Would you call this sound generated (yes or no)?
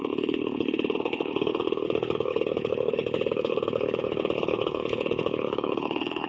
yes